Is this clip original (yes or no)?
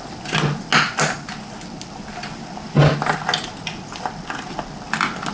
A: yes